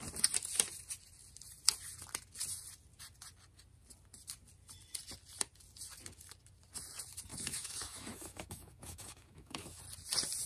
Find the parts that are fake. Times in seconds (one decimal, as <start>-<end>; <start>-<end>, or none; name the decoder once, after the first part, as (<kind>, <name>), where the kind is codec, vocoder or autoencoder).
7.3-9.8 (autoencoder, DAC-VAE)